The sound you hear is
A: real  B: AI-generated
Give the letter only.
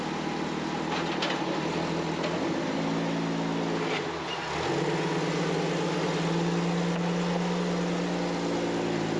A